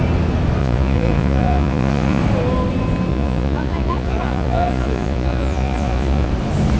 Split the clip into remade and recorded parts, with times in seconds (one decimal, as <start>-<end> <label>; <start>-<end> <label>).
0.0-0.6 recorded; 0.6-2.2 remade; 2.2-3.1 recorded; 3.1-6.3 remade; 6.3-6.8 recorded